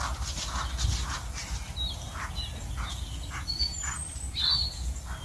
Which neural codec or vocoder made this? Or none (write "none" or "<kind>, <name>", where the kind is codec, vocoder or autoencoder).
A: none